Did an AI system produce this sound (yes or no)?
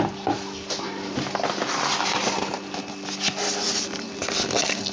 no